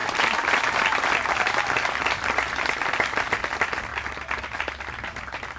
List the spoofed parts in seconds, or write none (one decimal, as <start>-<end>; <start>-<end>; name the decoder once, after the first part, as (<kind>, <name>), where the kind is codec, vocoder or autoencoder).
none